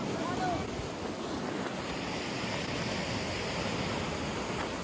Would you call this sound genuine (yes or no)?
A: yes